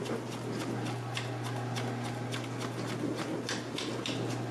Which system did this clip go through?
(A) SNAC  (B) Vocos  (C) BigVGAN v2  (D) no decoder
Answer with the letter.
D